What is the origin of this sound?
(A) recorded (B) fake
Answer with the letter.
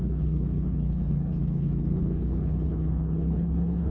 B